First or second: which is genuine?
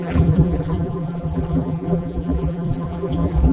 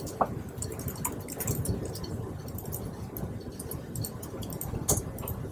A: second